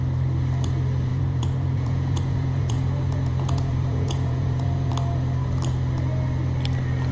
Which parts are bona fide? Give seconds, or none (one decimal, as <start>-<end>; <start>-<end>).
0.0-1.1; 4.9-7.1